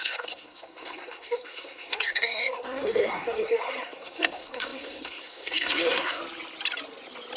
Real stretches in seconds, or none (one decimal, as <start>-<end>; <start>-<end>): 6.2-7.4